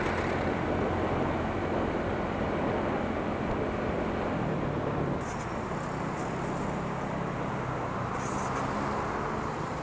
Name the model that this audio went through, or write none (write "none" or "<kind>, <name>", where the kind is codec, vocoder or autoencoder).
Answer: none